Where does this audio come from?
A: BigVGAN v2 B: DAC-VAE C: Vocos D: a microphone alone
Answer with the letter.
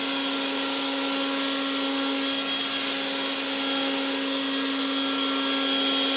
D